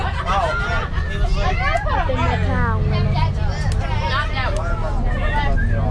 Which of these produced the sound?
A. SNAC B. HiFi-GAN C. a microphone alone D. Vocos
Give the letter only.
C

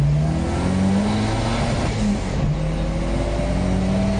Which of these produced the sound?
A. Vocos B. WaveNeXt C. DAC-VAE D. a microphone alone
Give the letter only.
D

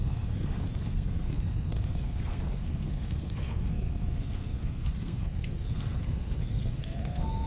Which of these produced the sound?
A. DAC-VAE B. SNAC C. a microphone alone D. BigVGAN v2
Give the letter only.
B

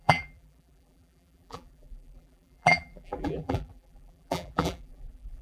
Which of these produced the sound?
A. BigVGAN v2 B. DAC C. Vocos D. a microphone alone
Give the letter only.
A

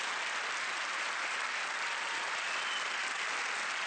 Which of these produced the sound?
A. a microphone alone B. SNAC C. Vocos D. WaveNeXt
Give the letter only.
A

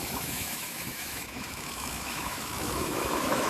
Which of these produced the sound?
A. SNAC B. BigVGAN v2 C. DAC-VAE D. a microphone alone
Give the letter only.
C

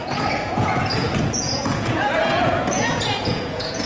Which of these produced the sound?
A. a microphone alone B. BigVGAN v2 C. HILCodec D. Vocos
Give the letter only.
D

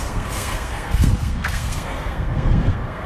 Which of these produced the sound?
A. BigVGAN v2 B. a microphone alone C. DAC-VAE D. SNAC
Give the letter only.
D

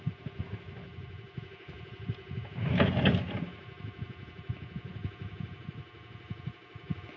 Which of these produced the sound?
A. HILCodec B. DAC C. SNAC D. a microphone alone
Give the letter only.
D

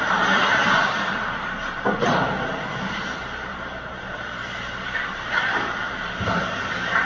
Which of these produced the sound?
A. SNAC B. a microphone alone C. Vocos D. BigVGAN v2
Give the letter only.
D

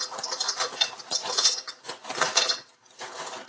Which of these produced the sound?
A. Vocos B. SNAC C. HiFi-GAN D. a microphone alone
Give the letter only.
A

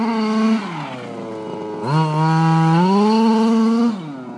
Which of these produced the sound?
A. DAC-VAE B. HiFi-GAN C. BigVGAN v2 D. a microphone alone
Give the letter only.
D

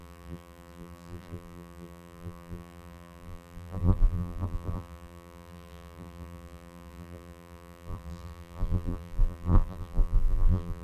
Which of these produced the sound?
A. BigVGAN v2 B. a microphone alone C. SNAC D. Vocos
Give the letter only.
A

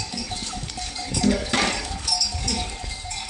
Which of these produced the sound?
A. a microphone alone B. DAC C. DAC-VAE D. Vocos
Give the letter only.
B